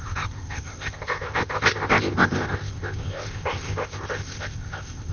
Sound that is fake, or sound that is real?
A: fake